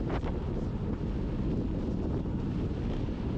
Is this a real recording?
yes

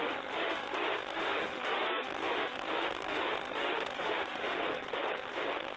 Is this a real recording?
no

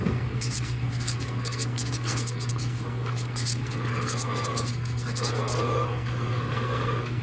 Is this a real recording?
no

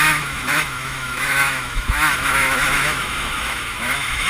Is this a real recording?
no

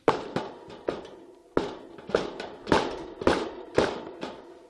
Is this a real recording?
yes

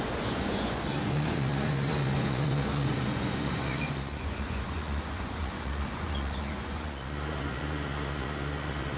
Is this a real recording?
no